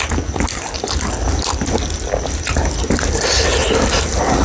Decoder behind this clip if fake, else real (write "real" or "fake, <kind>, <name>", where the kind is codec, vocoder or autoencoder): real